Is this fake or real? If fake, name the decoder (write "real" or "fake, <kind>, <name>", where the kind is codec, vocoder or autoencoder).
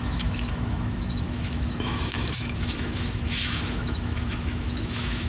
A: fake, autoencoder, DAC-VAE